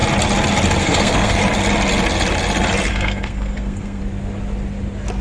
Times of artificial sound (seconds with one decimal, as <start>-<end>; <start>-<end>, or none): 0.8-1.4; 2.9-4.0